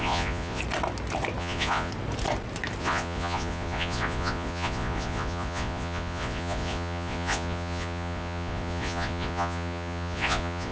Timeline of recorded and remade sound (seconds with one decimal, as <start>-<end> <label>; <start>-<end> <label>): 0.0-0.6 remade; 0.6-1.4 recorded; 1.4-1.9 remade; 1.9-2.8 recorded; 2.8-10.7 remade